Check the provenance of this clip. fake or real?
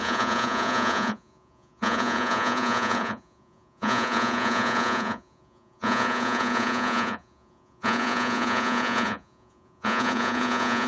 fake